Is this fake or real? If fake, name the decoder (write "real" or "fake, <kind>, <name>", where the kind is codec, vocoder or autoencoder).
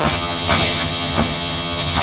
fake, vocoder, HiFi-GAN